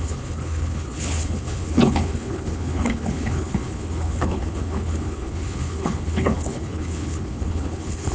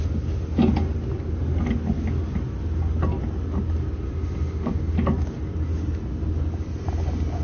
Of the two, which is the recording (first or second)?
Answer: second